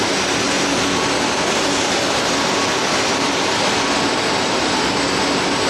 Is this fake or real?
fake